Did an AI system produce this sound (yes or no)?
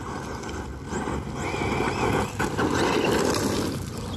no